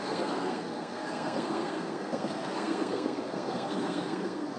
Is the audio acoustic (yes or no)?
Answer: no